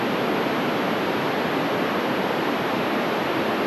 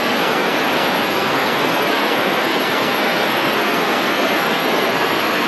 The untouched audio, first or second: first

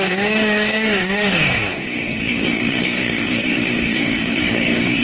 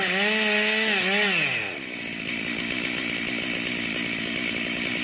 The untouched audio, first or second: second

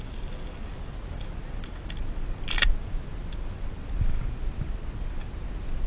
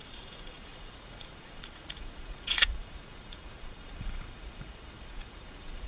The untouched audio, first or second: first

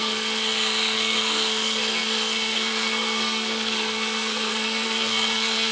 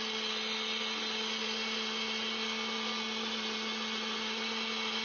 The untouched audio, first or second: second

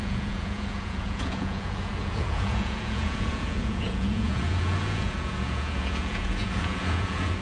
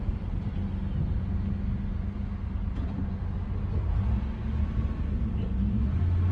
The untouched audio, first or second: second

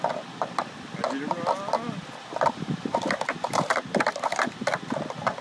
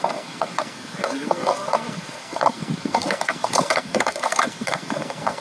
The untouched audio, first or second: first